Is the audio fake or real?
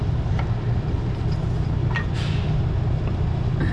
real